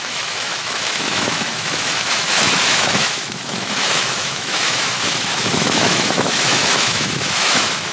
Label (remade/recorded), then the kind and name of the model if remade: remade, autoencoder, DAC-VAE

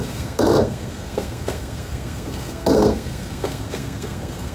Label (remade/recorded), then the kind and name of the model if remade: remade, codec, SNAC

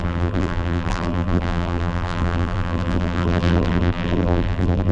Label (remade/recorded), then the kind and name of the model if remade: remade, vocoder, BigVGAN v2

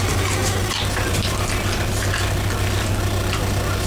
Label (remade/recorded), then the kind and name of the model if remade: recorded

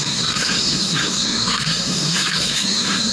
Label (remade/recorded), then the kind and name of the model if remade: remade, codec, SNAC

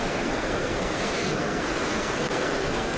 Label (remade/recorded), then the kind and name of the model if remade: remade, codec, SNAC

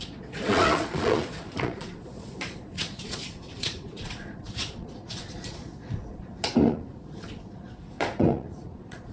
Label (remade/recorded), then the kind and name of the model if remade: remade, vocoder, Vocos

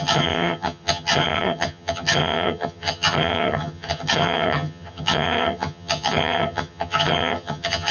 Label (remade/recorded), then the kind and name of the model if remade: remade, vocoder, HiFi-GAN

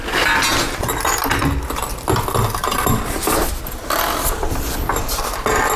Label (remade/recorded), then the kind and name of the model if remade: recorded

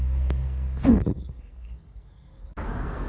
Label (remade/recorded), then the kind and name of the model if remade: remade, codec, SNAC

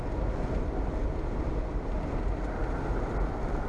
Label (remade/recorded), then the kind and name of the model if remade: recorded